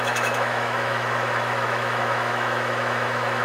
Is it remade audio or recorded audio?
remade